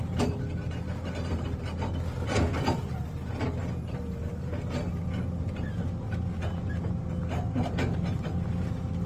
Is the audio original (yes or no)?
yes